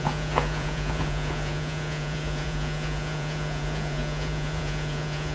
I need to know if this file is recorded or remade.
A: remade